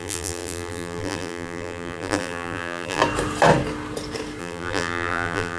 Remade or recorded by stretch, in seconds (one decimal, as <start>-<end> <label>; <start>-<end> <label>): 0.0-3.0 remade; 3.0-4.4 recorded; 4.4-5.6 remade